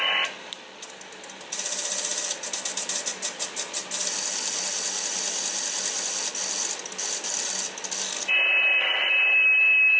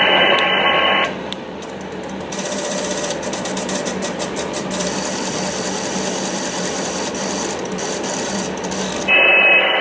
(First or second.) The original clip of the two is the first